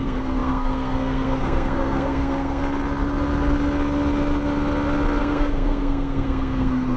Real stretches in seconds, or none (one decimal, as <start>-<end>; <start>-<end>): 2.6-5.2